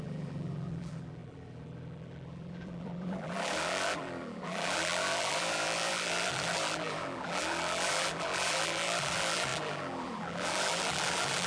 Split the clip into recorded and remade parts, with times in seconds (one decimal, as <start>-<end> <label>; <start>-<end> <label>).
0.0-11.5 remade